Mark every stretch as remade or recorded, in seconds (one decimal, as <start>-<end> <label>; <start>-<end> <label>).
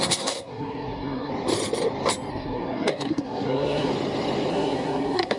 0.0-1.3 remade; 1.3-2.3 recorded; 2.3-3.9 remade; 3.9-4.5 recorded; 4.5-5.4 remade